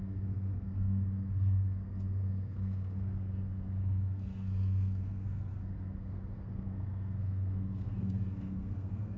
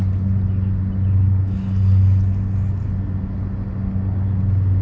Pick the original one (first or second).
second